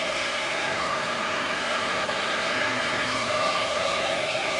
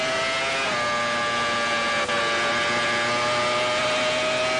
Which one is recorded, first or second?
second